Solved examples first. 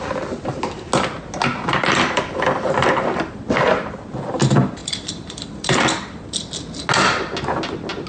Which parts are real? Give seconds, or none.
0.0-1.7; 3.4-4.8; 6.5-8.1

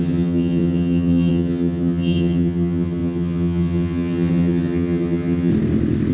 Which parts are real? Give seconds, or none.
5.5-6.1

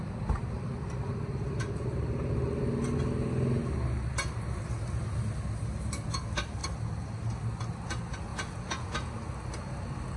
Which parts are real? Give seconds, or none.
0.0-8.3; 9.1-10.2

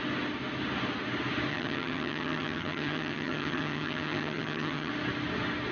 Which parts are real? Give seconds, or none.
0.0-1.5; 4.9-5.7

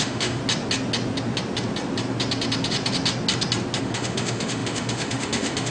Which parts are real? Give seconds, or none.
0.4-3.8

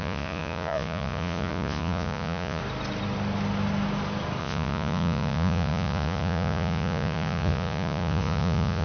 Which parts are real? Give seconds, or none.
2.6-4.4

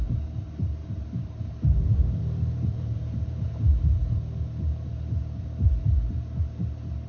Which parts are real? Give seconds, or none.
0.0-0.8; 3.6-7.1

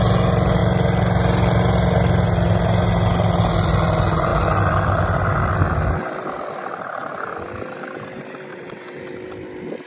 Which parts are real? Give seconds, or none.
0.0-8.5; 9.0-9.9